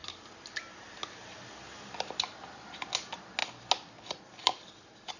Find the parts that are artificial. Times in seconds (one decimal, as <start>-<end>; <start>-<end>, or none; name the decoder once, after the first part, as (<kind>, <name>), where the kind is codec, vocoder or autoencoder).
none